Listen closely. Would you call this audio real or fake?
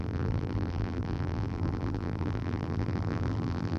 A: fake